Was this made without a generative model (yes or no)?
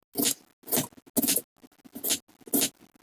yes